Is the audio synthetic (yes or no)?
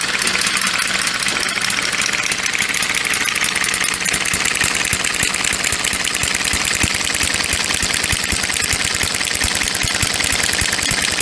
no